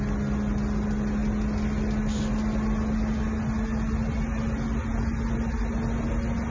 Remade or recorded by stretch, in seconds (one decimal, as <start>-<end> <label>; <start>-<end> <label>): 0.0-6.5 recorded